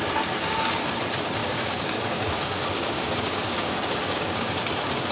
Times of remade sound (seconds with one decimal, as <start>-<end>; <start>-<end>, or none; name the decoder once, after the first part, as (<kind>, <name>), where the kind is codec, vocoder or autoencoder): 1.4-4.5 (codec, DAC)